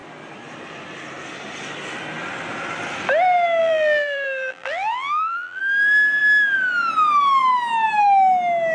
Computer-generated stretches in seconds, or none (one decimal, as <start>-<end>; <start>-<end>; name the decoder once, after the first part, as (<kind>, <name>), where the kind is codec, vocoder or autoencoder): 3.6-5.6 (vocoder, BigVGAN v2)